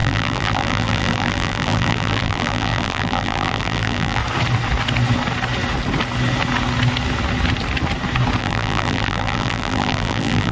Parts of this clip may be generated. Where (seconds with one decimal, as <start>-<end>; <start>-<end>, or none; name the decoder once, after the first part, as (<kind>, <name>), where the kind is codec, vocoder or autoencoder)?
0.0-4.2 (vocoder, BigVGAN v2); 8.4-10.5